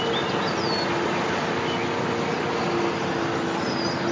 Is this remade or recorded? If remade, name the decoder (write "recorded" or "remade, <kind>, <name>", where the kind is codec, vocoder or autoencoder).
recorded